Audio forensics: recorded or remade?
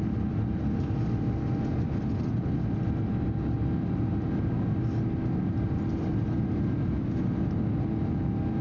recorded